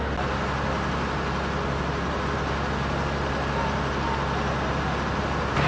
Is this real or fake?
real